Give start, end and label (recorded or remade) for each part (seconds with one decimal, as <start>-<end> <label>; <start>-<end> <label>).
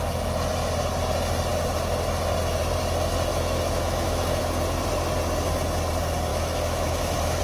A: 0.0-3.3 recorded; 3.3-4.4 remade; 4.4-6.3 recorded; 6.3-7.4 remade